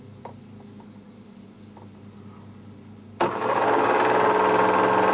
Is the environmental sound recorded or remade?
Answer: recorded